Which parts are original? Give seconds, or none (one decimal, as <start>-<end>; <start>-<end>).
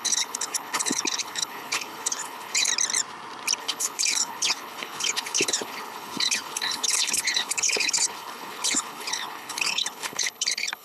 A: 2.7-3.6